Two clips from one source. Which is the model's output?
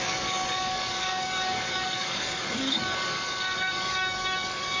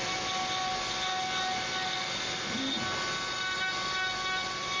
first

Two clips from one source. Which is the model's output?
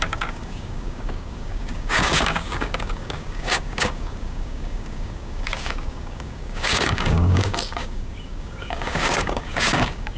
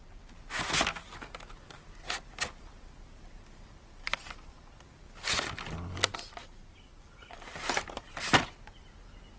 first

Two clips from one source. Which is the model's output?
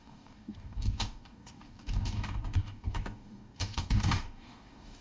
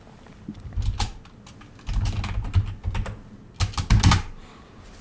first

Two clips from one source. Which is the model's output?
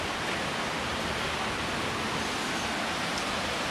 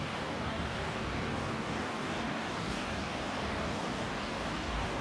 second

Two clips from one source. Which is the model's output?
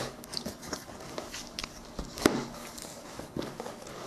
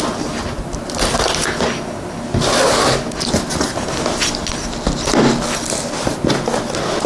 first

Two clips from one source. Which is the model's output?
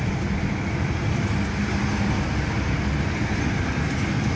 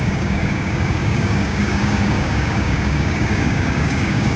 second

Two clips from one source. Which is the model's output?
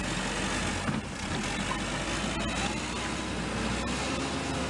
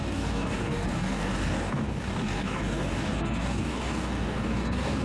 second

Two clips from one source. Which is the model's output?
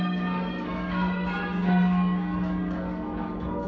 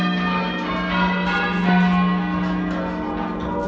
first